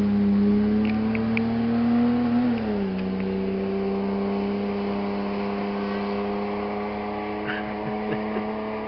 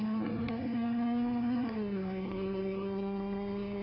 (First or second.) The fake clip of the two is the second